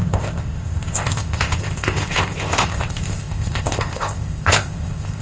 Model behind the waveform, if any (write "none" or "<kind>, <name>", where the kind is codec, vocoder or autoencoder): codec, ZipCodec